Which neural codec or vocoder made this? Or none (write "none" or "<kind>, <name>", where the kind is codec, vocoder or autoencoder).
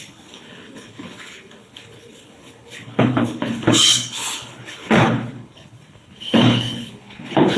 codec, HILCodec